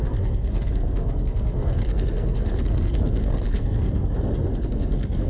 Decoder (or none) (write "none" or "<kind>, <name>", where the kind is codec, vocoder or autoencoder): codec, SNAC